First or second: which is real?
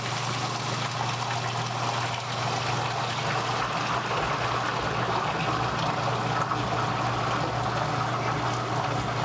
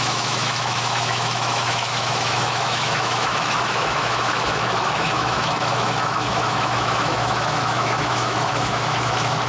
first